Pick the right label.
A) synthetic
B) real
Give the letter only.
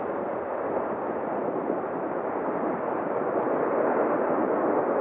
B